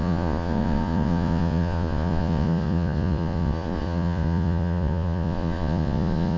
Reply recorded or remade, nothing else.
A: remade